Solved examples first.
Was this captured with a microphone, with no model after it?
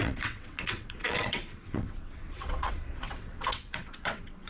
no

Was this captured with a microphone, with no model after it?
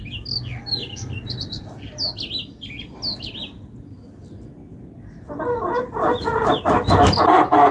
yes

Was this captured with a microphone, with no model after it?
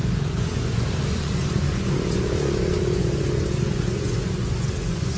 no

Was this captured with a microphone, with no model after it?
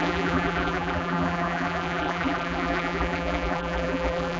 no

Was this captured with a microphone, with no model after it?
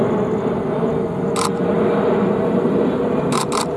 yes